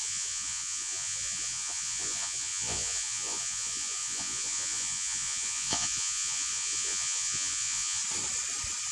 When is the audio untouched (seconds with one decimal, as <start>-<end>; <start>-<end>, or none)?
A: 8.0-8.9